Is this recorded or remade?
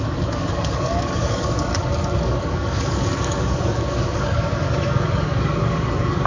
remade